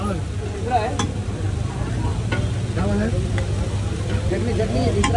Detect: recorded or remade recorded